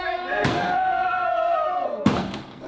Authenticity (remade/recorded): remade